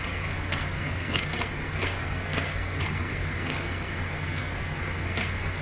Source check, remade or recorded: remade